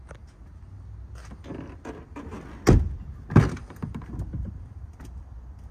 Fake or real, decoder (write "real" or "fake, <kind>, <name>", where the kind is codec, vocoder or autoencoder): real